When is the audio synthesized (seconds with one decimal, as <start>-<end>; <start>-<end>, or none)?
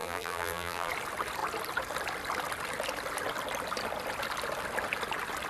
0.0-0.9